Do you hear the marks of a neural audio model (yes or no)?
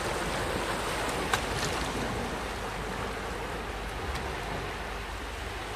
no